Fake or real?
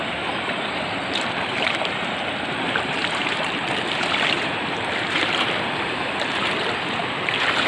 fake